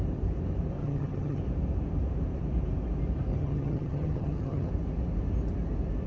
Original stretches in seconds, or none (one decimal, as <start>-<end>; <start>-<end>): 0.0-0.8; 1.4-3.3; 4.7-6.1